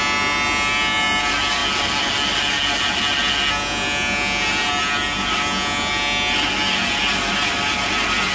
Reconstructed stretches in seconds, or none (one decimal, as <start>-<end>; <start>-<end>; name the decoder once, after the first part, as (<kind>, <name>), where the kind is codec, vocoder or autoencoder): none